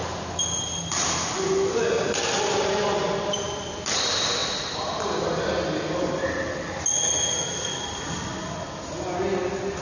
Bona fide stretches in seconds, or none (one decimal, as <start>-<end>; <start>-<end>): 0.0-9.8